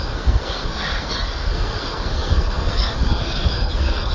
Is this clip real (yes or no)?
no